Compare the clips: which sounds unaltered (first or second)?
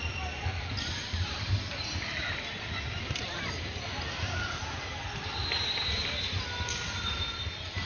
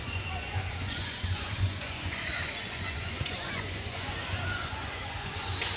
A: first